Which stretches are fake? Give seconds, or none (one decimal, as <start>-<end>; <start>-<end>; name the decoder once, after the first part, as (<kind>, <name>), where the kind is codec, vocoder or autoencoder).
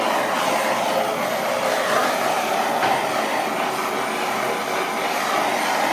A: none